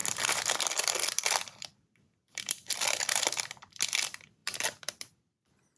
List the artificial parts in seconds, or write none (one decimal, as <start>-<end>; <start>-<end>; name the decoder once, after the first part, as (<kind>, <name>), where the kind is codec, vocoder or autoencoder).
0.0-5.8 (vocoder, BigVGAN v2)